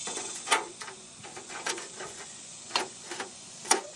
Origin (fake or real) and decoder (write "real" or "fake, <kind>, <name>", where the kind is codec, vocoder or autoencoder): fake, vocoder, Vocos